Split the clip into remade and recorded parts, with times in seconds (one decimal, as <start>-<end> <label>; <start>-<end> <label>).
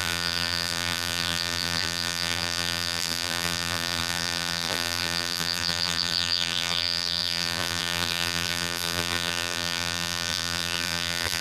0.0-11.4 remade